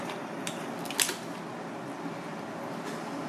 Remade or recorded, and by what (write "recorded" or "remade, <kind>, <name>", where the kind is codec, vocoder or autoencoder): recorded